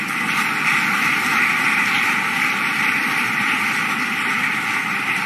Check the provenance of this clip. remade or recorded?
recorded